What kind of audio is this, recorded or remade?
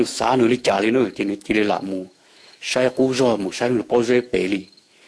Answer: remade